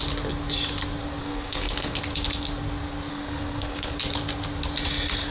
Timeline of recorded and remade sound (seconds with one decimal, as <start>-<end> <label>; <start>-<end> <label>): 0.0-1.2 recorded; 1.2-2.0 remade; 2.0-3.1 recorded; 3.1-3.9 remade; 3.9-5.3 recorded